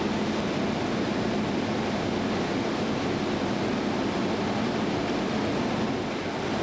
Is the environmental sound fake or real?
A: real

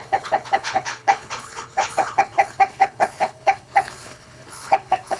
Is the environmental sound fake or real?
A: fake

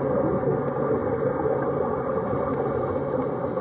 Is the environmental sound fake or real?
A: real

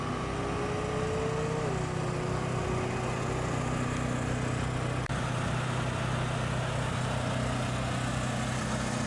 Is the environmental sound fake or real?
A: real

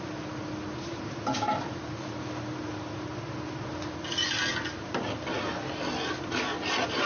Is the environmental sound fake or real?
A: real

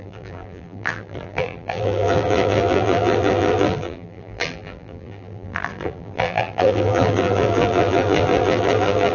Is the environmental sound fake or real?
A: fake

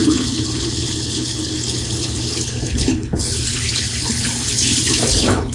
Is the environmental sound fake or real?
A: fake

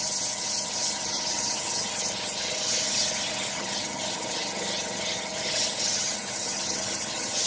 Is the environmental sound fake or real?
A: fake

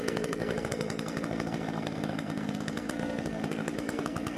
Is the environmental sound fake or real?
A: fake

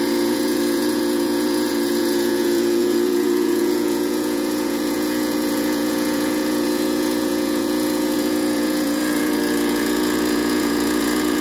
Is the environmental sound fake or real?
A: fake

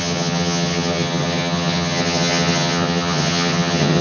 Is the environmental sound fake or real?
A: fake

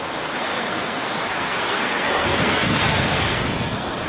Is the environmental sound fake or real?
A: fake